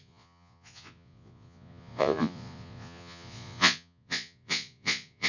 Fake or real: fake